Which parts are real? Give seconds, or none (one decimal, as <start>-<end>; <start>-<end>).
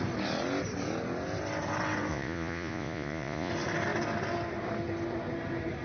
0.0-2.1; 3.5-5.8